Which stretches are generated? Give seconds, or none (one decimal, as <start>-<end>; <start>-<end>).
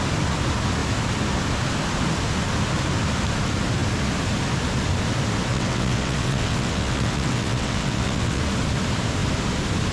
5.5-8.4